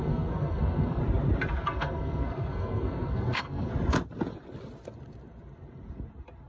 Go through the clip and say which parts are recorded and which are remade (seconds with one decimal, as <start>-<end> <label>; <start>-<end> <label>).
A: 0.0-1.0 remade; 1.0-1.6 recorded; 1.6-3.7 remade; 3.7-6.5 recorded